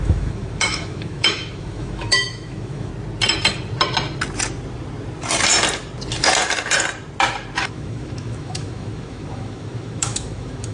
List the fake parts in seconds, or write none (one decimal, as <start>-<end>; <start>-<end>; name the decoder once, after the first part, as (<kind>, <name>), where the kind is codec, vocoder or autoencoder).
0.0-2.9 (autoencoder, DAC-VAE); 7.6-10.7